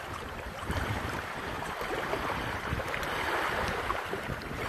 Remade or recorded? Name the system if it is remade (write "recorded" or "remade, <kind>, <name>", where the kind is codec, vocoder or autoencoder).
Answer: remade, vocoder, BigVGAN v2